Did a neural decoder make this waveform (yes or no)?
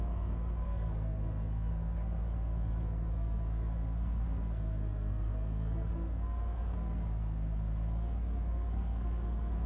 yes